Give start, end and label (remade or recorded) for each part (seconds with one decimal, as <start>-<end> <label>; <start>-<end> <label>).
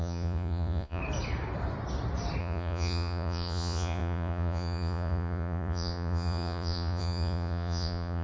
0.0-1.0 remade; 1.0-2.4 recorded; 2.4-8.2 remade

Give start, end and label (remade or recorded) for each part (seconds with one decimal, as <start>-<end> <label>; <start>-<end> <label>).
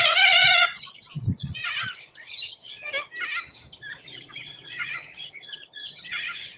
0.0-2.8 remade; 2.8-3.8 recorded; 3.8-6.6 remade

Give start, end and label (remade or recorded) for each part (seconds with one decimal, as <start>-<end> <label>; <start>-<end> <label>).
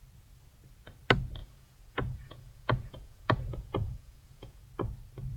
0.0-1.4 recorded; 1.4-4.6 remade; 4.6-5.4 recorded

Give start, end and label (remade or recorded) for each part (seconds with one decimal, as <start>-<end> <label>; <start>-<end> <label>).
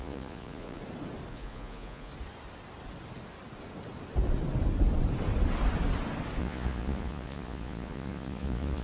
0.0-0.8 remade; 0.8-1.3 recorded; 1.3-2.1 remade; 2.1-6.4 recorded; 6.4-8.8 remade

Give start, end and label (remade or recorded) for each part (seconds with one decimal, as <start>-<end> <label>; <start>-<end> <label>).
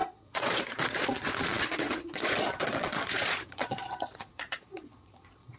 0.0-5.6 remade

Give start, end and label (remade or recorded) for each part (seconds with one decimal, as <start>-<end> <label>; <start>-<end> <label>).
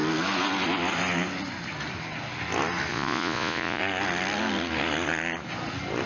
0.0-2.9 recorded; 2.9-3.8 remade; 3.8-6.1 recorded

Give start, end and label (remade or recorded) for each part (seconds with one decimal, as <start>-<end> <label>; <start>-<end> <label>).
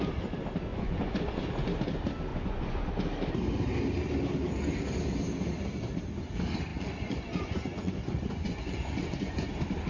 0.0-0.7 recorded; 0.7-1.7 remade; 1.7-2.3 recorded; 2.3-2.9 remade; 2.9-6.7 recorded; 6.7-9.5 remade; 9.5-9.9 recorded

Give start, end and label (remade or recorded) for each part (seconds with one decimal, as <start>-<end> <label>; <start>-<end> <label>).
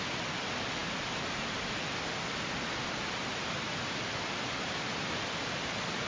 0.0-6.1 recorded